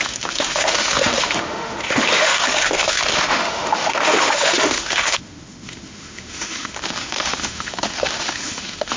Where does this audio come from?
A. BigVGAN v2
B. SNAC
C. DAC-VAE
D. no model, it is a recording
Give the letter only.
C